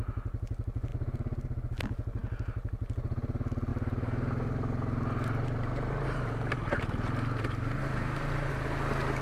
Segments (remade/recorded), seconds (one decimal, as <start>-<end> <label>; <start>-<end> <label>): 0.0-3.7 recorded; 3.7-8.5 remade; 8.5-9.2 recorded